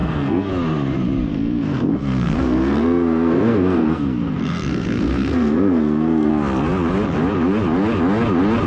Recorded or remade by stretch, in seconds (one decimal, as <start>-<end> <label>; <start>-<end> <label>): 0.0-0.5 remade; 0.5-1.3 recorded; 1.3-6.3 remade; 6.3-8.7 recorded